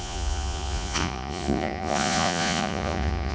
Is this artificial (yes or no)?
yes